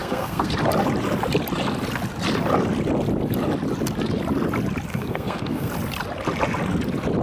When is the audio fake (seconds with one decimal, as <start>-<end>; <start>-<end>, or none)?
0.0-0.5; 4.9-5.7